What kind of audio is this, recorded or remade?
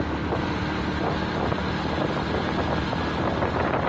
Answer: recorded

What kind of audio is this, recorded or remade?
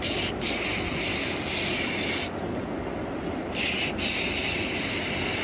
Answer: recorded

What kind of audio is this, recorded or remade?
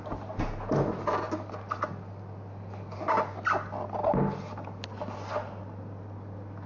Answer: recorded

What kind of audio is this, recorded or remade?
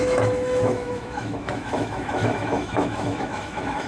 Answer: remade